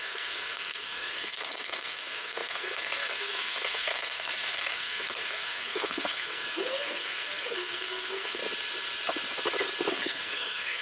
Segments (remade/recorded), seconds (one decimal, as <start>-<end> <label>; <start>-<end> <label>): 0.0-8.4 remade; 8.4-9.9 recorded; 9.9-10.8 remade